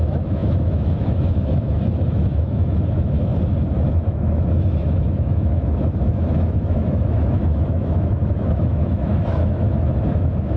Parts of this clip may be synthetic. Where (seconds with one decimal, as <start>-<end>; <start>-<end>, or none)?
0.0-3.3; 3.9-10.6